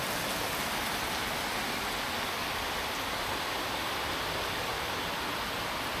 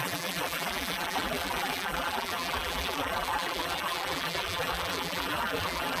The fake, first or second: second